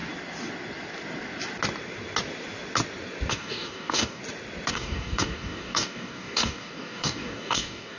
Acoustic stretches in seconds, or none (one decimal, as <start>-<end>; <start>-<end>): 0.0-3.3; 4.2-4.7